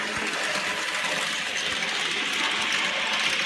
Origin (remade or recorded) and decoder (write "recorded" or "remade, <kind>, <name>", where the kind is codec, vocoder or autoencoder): recorded